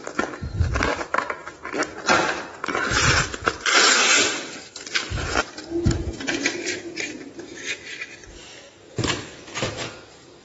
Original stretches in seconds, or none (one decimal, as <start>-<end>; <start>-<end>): 0.0-2.1; 5.4-8.4; 9.2-10.4